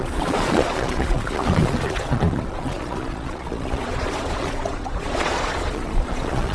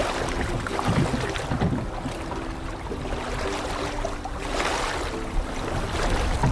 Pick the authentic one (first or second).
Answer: second